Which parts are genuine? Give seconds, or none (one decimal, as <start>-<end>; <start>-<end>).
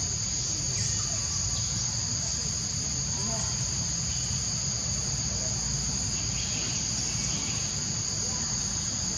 0.0-9.2